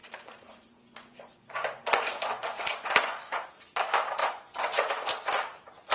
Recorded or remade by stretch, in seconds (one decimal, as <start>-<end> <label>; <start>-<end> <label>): 0.0-3.5 remade; 3.5-4.2 recorded; 4.2-4.9 remade; 4.9-5.9 recorded